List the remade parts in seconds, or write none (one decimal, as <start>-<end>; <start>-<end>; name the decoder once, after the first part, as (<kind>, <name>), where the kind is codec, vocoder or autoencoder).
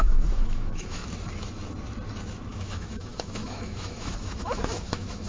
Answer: 0.0-1.0 (autoencoder, DAC-VAE); 2.5-5.3